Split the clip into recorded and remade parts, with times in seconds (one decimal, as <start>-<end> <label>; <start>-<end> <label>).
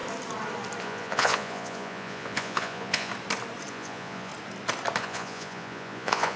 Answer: 0.0-0.8 recorded; 0.8-3.1 remade; 3.1-3.7 recorded; 3.7-4.3 remade; 4.3-5.0 recorded; 5.0-6.4 remade